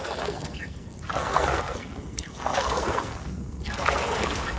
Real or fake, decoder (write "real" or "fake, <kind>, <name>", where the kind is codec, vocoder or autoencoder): fake, codec, SNAC